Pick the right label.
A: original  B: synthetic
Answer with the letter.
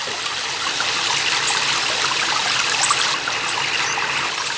A